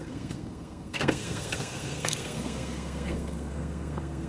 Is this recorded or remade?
remade